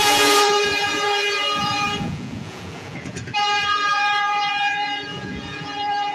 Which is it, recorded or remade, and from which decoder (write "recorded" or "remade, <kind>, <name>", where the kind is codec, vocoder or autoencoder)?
remade, vocoder, Vocos